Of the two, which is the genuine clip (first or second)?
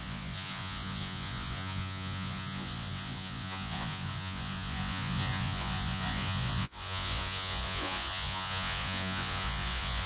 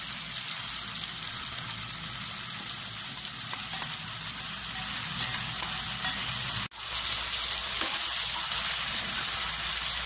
second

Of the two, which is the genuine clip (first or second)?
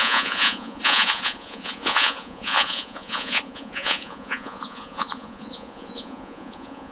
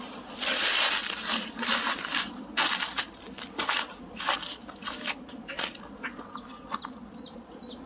second